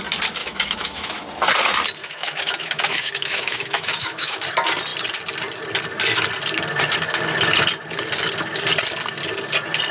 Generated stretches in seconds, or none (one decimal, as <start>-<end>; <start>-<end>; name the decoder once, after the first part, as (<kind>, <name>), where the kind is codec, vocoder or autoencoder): 0.4-1.2 (autoencoder, DAC-VAE); 2.0-4.4